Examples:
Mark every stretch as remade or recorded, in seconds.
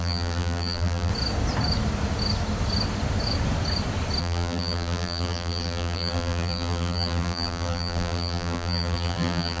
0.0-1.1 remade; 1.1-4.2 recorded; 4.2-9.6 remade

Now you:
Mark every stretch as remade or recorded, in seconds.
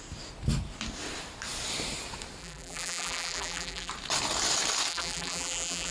0.0-2.4 recorded; 2.4-3.9 remade; 3.9-4.9 recorded; 4.9-5.9 remade